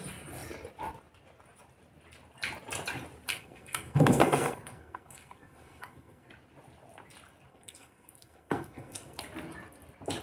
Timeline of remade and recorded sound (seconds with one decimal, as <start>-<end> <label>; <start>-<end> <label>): 0.0-3.3 recorded; 3.3-6.3 remade; 6.3-7.5 recorded; 7.5-9.2 remade; 9.2-10.2 recorded